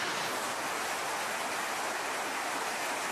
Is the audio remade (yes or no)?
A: no